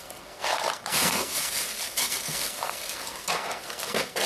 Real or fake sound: fake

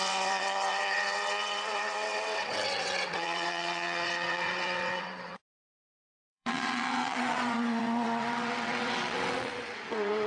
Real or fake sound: fake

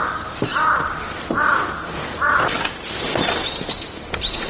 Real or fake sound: real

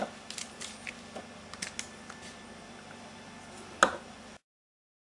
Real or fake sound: real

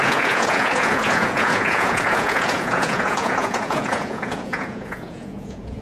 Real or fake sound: fake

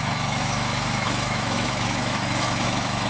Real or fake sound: fake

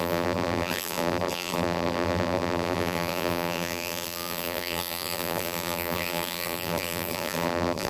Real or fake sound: fake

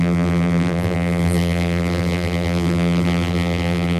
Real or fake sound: fake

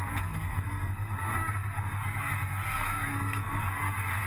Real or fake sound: fake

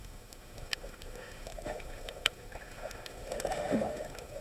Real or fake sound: fake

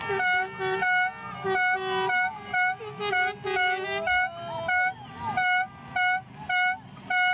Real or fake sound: real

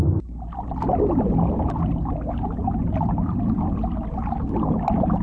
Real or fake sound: real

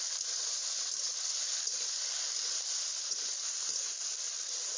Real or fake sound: fake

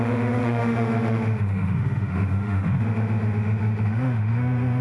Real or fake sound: fake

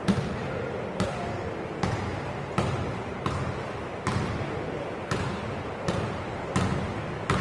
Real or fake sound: real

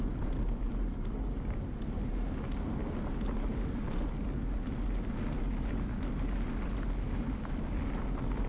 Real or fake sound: real